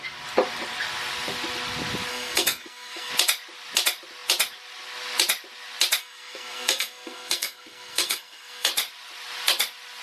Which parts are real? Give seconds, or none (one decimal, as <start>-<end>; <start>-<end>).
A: 0.0-2.1; 3.1-6.0; 8.7-10.0